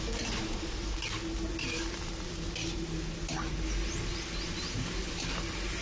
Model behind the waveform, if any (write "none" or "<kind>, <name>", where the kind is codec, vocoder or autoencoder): none